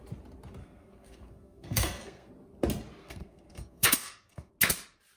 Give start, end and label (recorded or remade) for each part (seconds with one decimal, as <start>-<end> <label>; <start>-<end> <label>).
0.0-0.6 recorded; 0.6-2.3 remade; 2.3-3.0 recorded; 3.0-4.5 remade; 4.5-5.2 recorded

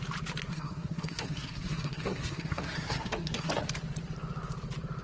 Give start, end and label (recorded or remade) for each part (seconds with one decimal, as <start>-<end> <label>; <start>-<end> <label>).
0.0-0.5 recorded; 0.5-3.5 remade; 3.5-5.0 recorded

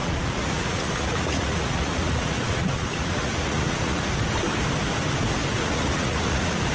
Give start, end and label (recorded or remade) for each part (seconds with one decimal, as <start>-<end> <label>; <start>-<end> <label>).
0.0-4.0 remade; 4.0-5.5 recorded; 5.5-6.7 remade